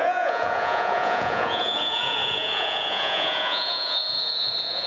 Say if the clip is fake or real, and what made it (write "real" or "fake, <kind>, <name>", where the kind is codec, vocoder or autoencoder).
fake, vocoder, Vocos